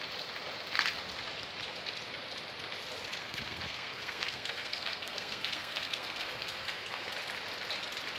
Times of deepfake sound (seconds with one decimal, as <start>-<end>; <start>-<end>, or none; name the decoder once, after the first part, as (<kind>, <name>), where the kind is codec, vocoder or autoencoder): 3.2-7.1 (codec, SNAC)